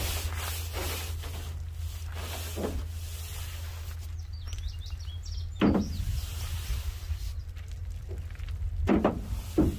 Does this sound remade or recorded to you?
recorded